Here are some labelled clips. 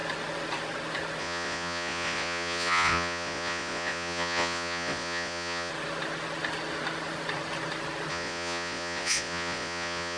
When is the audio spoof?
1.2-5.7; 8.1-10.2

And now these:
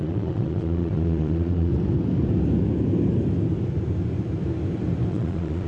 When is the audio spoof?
0.0-1.7; 5.1-5.7

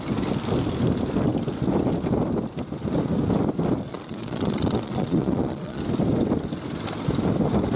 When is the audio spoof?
3.9-5.8

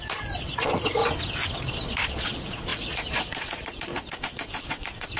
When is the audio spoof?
0.0-1.0; 1.7-5.2

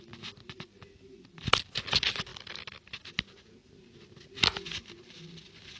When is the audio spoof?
none

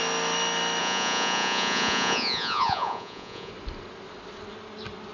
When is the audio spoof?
0.8-3.5